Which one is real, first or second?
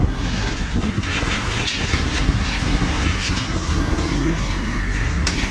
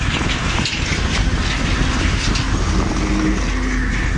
second